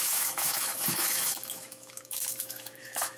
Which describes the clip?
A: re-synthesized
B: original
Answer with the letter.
A